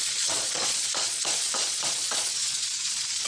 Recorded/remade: remade